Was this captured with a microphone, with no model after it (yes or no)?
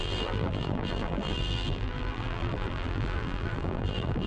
no